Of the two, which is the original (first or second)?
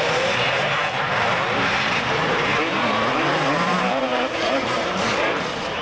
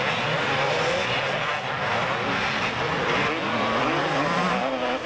second